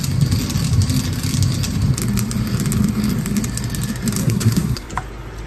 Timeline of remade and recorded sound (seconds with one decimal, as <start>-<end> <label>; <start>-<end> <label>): 0.0-4.2 recorded; 4.2-4.9 remade; 4.9-5.5 recorded